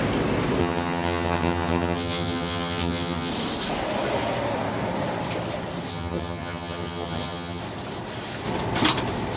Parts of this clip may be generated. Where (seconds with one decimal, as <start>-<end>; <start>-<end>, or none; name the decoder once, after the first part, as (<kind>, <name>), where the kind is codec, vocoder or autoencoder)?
0.6-3.3 (vocoder, HiFi-GAN); 5.9-7.6